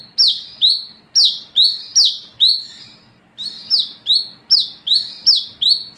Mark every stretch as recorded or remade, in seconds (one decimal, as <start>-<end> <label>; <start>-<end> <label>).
0.0-6.0 recorded